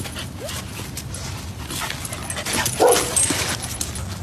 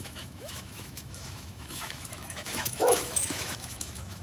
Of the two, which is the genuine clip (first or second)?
first